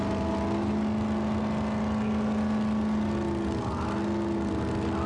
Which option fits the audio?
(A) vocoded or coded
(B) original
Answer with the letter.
B